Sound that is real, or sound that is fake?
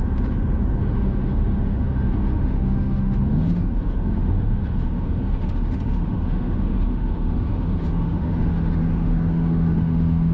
fake